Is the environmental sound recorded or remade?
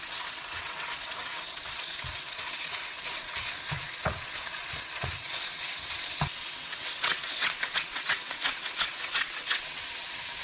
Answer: remade